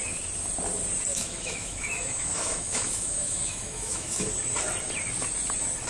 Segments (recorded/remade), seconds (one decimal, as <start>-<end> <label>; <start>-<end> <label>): 0.0-1.1 recorded; 1.1-4.3 remade; 4.3-5.9 recorded